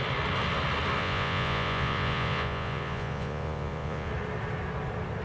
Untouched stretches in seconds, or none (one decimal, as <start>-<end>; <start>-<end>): 0.0-1.0; 4.1-5.2